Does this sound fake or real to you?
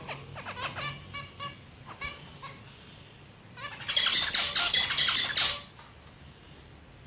real